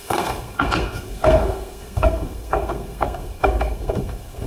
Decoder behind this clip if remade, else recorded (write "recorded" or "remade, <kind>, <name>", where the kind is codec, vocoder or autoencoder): remade, codec, SNAC